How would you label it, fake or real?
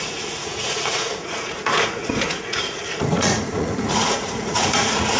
fake